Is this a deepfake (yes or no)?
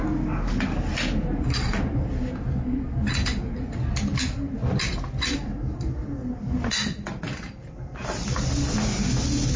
no